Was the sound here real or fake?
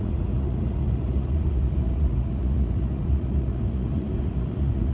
fake